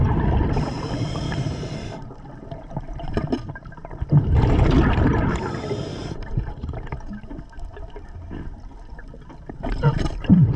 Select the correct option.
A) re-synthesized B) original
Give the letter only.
A